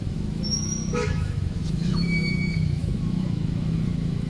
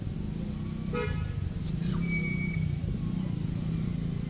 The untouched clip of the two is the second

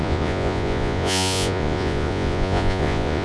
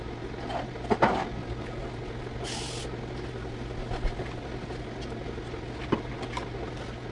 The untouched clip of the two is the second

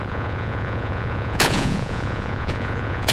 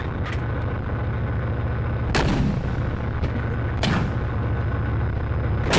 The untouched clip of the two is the second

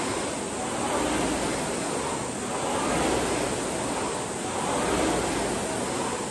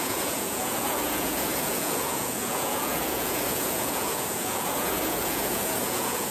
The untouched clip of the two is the first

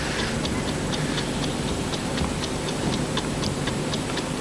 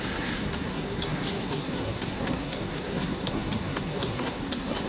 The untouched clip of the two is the first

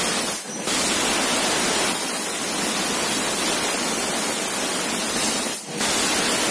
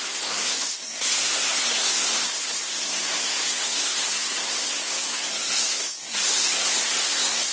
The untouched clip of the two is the first